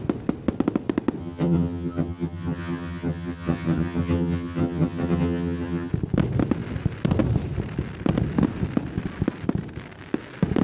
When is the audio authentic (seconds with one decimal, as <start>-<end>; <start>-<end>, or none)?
0.0-1.2; 5.9-10.6